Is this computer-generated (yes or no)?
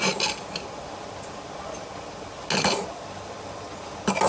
no